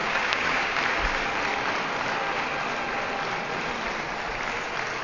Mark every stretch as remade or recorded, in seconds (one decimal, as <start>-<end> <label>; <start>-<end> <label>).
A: 0.0-0.8 remade; 0.8-5.0 recorded